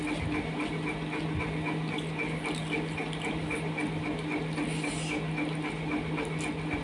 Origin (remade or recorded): recorded